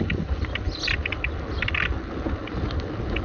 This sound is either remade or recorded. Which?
recorded